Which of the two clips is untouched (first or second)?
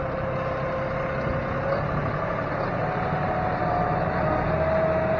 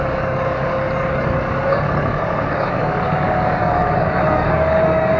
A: first